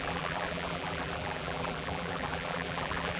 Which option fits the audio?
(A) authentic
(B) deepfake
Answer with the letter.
B